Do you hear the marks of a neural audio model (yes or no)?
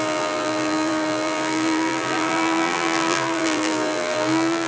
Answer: yes